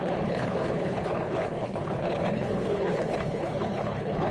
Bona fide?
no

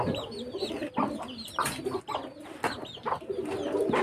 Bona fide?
yes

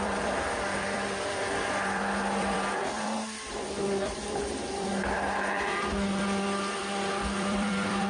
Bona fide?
no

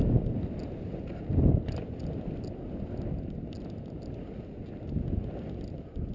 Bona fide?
yes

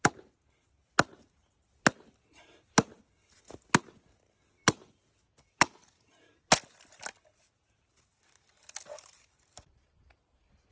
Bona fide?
yes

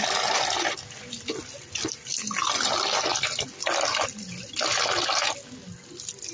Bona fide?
yes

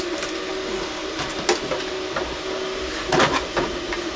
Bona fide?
yes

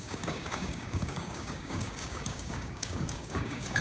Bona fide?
no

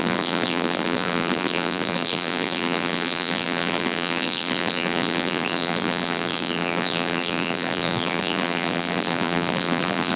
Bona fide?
no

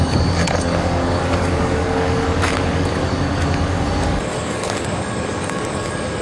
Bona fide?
no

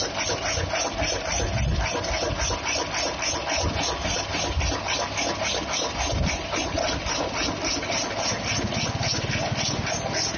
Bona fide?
yes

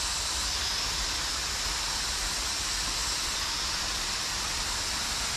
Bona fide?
yes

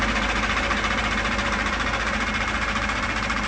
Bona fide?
yes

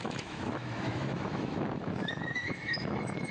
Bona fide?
no